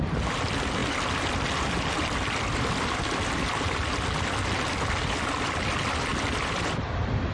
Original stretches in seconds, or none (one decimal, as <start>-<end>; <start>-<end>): 0.0-6.1

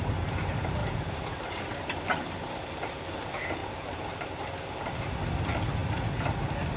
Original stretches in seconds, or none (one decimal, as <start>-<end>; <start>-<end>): 0.0-0.8; 2.2-3.6; 4.4-6.8

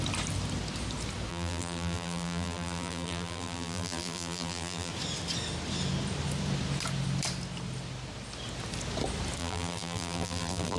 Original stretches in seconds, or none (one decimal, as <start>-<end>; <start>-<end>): 0.0-1.3; 4.9-9.4

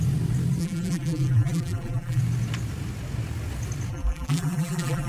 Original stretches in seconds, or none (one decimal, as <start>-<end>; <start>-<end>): 0.0-0.6; 2.2-3.9

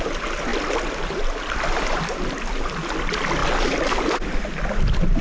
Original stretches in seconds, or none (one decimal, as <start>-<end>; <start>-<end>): 0.0-0.5; 2.2-5.2

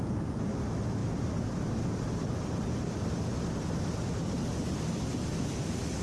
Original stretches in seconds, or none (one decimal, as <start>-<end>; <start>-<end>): 1.0-4.1